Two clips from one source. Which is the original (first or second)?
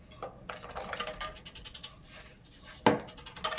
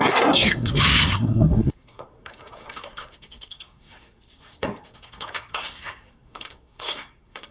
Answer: first